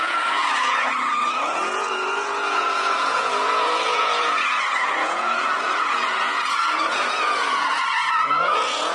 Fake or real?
fake